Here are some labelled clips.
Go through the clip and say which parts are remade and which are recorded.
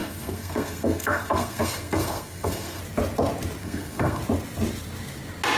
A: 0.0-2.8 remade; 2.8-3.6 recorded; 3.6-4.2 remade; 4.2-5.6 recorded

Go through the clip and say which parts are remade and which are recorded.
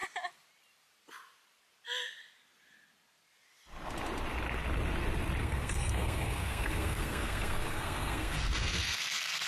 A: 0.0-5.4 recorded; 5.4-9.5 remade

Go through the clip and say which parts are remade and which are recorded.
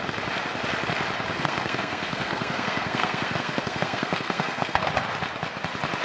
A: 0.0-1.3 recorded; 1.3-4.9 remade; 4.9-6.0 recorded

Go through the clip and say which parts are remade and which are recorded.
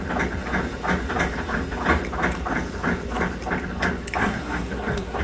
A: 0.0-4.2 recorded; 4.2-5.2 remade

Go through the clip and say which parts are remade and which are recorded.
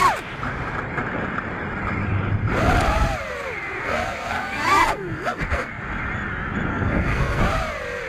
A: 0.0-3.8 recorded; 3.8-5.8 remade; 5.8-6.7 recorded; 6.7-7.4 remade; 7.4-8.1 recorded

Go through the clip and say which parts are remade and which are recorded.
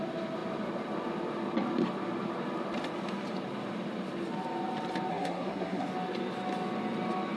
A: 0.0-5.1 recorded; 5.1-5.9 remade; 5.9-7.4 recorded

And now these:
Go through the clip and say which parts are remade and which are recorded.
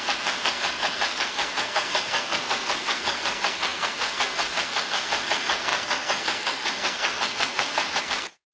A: 0.0-8.5 remade